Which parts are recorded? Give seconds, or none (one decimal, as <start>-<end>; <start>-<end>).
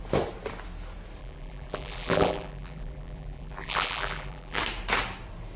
0.0-1.2; 4.6-5.6